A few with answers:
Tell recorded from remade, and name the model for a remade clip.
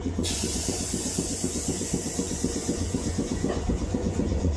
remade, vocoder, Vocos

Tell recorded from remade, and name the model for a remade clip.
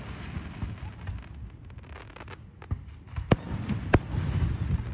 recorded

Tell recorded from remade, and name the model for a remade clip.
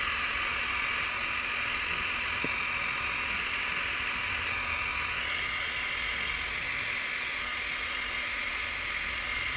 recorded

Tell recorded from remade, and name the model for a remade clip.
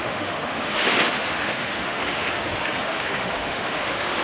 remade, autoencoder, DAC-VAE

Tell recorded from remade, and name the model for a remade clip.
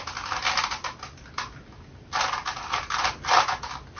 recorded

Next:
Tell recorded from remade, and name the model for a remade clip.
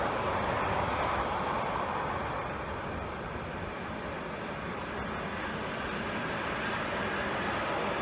recorded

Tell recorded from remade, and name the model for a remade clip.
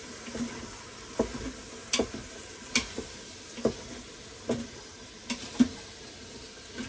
recorded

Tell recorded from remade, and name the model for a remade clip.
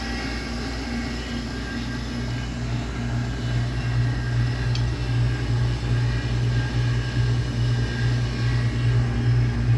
recorded